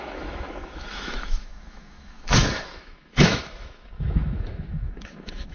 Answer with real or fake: fake